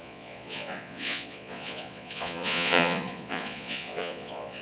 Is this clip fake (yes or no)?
yes